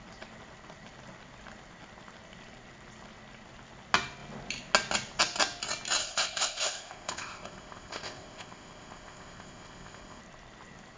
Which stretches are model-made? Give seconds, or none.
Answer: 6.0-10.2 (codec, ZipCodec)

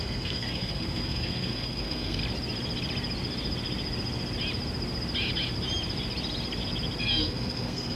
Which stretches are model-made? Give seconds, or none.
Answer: 0.0-2.2 (codec, SNAC); 7.0-8.0